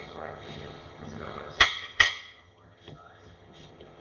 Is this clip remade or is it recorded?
remade